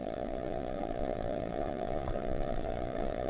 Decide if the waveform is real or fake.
fake